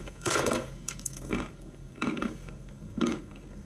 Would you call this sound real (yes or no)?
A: no